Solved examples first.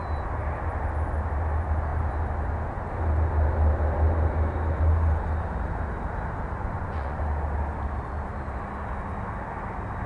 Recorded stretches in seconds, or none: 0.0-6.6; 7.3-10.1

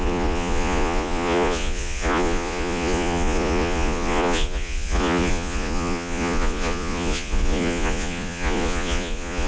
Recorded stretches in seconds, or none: none

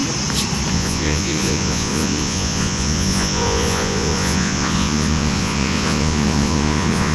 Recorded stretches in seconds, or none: 0.0-0.7

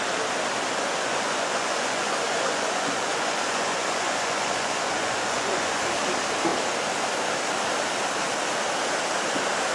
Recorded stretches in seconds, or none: 0.0-0.7; 5.8-9.7

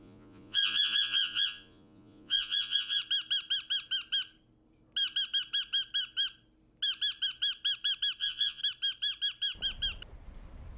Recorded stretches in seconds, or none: 3.0-8.2; 8.6-10.8

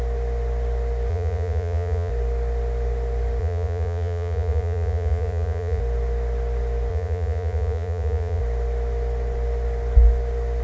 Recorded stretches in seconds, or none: 0.0-1.1; 2.1-3.4; 5.8-6.9; 8.4-10.6